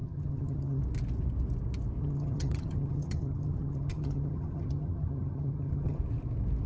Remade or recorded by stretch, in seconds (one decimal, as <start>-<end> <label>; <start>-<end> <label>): 0.0-0.8 remade; 0.8-2.0 recorded; 2.0-6.0 remade; 6.0-6.7 recorded